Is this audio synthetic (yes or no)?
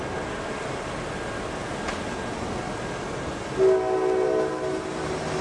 no